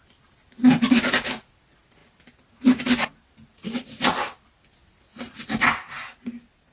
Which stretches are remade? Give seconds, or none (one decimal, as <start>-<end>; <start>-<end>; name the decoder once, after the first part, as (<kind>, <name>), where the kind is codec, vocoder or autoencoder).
3.5-4.1 (vocoder, Vocos); 5.1-5.7